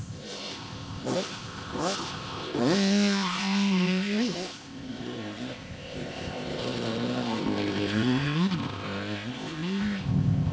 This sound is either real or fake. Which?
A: fake